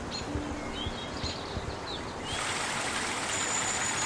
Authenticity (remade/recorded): recorded